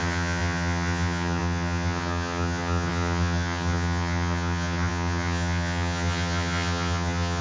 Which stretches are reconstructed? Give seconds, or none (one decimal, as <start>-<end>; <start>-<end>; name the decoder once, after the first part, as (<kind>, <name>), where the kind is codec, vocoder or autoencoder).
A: 0.0-7.4 (vocoder, HiFi-GAN)